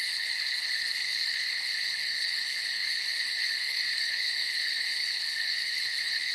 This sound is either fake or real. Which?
fake